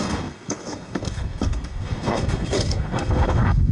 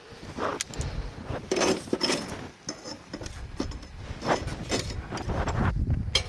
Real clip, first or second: second